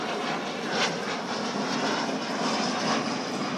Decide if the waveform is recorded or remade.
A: recorded